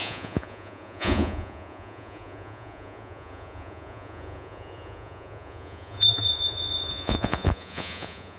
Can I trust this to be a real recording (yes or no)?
no